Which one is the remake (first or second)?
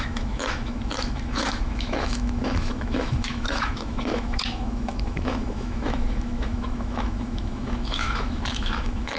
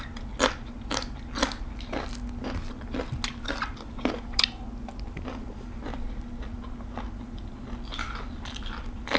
first